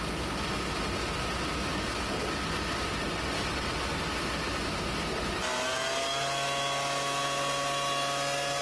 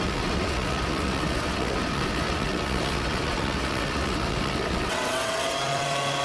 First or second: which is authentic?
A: first